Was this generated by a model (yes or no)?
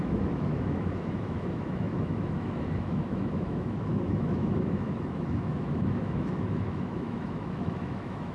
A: yes